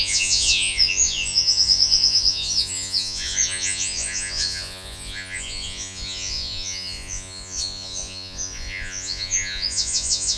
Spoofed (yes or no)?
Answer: yes